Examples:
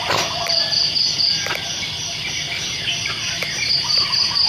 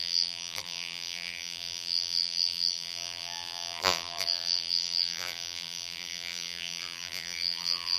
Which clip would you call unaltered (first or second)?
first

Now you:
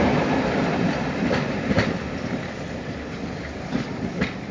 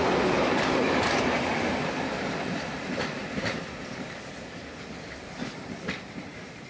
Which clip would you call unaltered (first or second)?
first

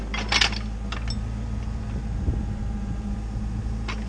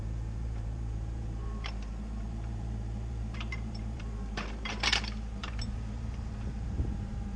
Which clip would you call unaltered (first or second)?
first